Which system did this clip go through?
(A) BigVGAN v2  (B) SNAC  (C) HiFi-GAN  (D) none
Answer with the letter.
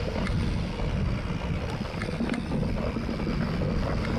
D